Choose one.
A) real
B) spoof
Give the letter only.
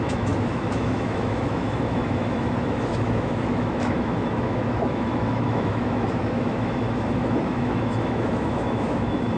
B